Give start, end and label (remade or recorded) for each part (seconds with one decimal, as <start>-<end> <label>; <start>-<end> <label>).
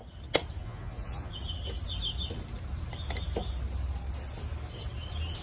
0.0-0.6 recorded; 0.6-1.3 remade; 1.3-5.4 recorded